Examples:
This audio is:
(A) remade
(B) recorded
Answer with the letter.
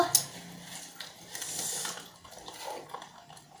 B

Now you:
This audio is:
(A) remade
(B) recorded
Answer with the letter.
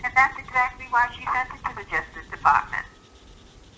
B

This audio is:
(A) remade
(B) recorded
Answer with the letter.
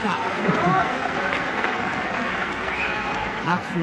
A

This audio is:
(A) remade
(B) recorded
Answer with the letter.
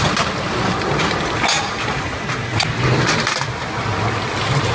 B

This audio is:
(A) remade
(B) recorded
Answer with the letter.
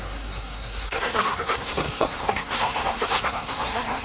A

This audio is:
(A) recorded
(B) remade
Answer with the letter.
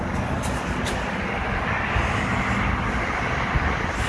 A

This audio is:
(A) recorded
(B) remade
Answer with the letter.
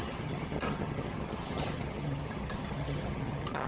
B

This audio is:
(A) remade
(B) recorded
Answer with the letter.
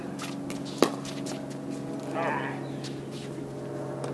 B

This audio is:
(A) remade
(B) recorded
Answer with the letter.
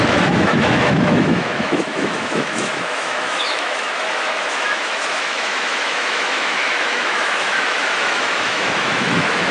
A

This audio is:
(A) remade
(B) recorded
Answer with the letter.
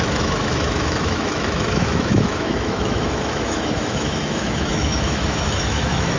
A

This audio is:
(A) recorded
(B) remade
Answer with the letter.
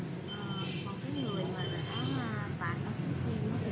A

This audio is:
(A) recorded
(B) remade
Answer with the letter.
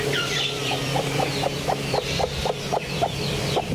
B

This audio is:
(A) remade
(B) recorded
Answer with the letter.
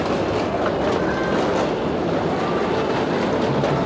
B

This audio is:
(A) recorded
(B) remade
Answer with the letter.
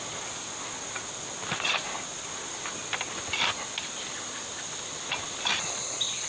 A